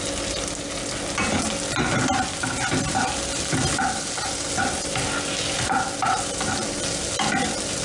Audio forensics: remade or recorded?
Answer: recorded